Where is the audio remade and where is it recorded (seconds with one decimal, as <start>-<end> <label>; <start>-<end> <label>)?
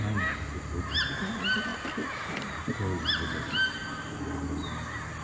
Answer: 0.0-5.2 recorded